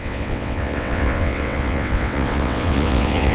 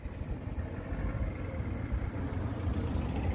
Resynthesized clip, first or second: first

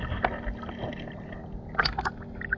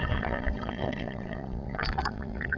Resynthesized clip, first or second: second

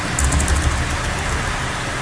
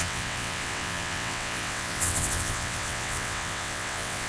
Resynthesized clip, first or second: second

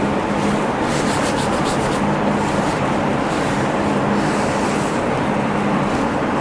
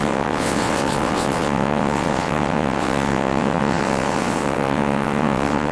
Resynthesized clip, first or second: second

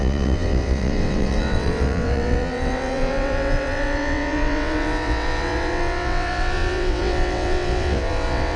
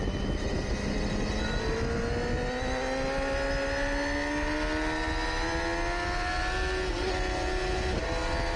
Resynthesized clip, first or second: first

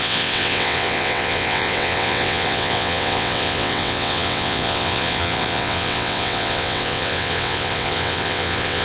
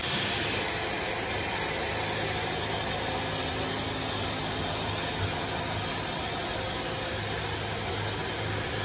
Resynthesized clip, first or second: first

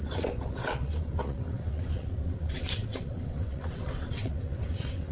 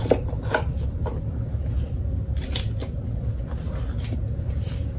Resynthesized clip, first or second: first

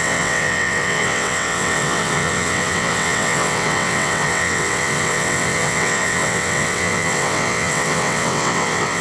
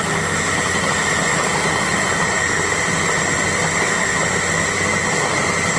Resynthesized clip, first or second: first